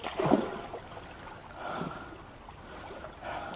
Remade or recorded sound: recorded